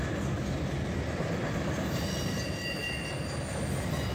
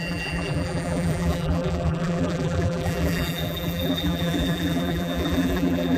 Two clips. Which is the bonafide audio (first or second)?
first